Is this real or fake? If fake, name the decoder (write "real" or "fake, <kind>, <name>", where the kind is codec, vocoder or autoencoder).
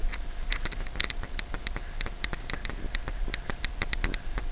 real